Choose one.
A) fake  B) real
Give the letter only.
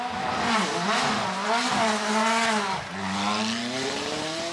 B